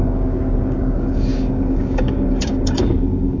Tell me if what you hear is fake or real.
fake